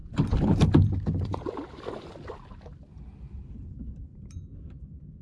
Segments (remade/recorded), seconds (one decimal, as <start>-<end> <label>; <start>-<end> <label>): 0.0-5.2 recorded